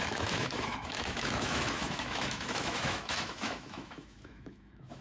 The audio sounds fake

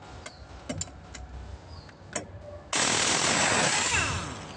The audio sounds real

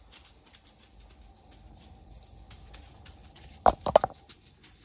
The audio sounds real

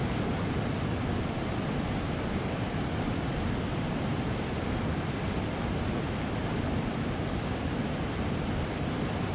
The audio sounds real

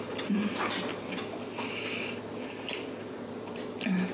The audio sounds real